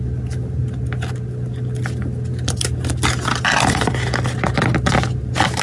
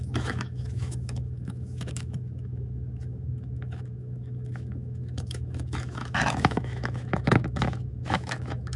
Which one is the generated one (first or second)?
second